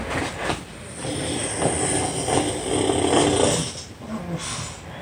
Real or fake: real